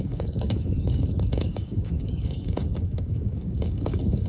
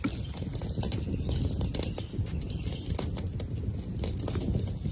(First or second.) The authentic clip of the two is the second